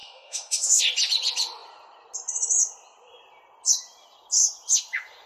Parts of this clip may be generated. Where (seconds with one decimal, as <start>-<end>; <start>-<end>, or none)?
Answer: 0.0-0.8